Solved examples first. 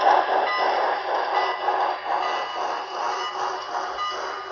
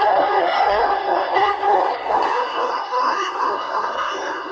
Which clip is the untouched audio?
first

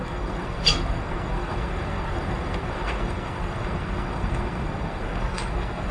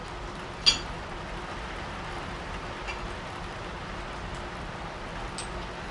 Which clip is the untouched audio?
second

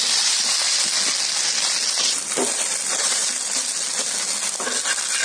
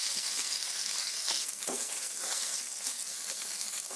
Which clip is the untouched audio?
first